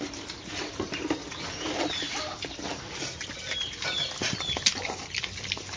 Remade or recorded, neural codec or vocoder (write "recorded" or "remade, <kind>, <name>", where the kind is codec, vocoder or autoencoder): recorded